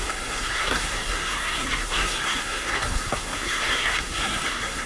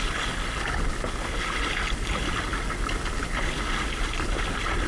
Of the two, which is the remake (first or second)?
first